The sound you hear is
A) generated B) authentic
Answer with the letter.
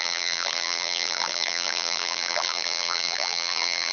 A